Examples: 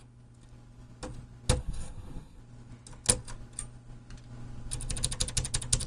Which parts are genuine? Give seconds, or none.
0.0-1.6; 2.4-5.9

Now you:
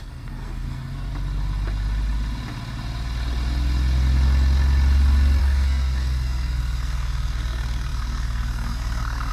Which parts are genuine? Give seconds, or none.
1.1-5.4

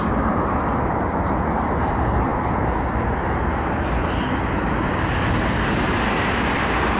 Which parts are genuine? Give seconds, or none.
0.0-7.0